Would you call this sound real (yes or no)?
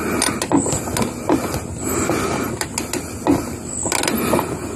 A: yes